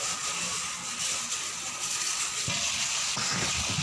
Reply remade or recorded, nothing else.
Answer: recorded